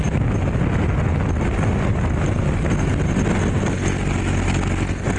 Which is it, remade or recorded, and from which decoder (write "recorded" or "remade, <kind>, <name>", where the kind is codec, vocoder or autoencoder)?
recorded